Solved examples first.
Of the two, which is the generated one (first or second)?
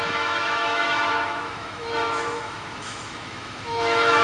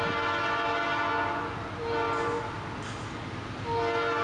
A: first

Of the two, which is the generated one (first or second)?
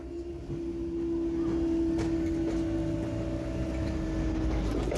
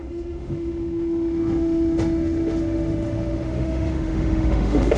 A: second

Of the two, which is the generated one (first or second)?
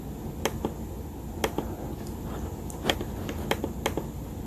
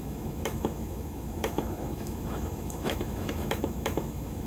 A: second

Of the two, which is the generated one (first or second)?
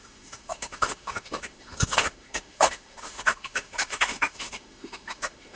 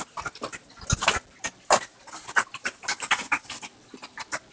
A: first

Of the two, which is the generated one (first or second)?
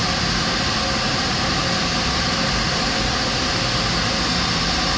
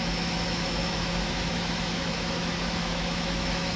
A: second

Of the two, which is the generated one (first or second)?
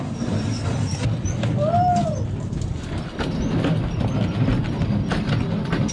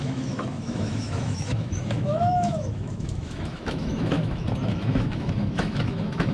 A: second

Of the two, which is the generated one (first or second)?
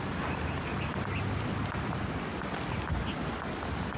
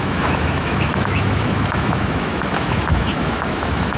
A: second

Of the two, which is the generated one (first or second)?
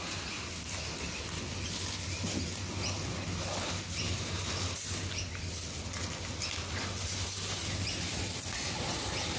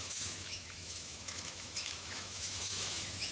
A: second